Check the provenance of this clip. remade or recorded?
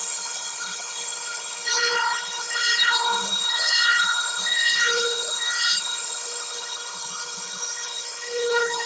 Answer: remade